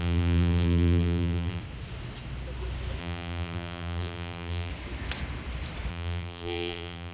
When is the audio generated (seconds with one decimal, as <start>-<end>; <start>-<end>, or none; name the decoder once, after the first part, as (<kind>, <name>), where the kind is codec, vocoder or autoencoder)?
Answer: 0.0-1.6 (vocoder, BigVGAN v2); 3.0-4.7; 5.9-7.1